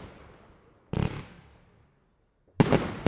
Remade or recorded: recorded